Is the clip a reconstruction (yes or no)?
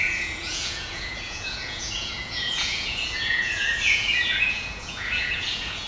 yes